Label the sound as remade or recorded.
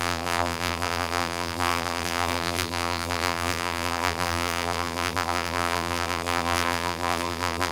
remade